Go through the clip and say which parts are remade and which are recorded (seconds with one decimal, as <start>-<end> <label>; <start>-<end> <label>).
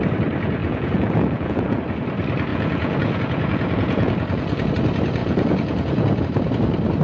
0.0-0.6 recorded; 0.6-1.8 remade; 1.8-2.5 recorded; 2.5-4.7 remade; 4.7-5.2 recorded; 5.2-6.2 remade; 6.2-7.0 recorded